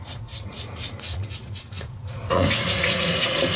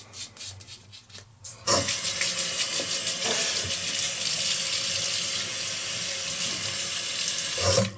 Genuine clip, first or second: second